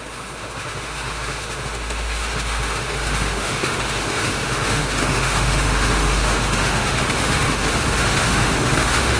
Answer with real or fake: fake